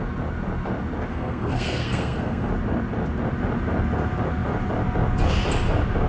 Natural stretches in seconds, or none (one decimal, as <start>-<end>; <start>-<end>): 0.0-1.1; 2.5-6.1